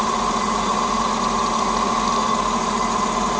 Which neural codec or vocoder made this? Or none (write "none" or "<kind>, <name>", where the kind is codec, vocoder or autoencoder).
none